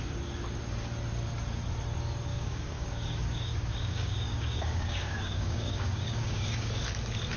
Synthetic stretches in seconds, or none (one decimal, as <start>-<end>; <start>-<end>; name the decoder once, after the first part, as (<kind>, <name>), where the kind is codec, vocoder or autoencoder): 2.3-6.7 (codec, DAC)